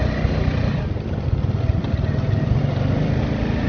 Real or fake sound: real